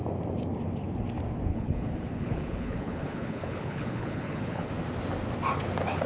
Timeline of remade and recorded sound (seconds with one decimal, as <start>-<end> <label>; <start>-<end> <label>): 0.0-1.5 recorded; 1.5-4.7 remade; 4.7-6.1 recorded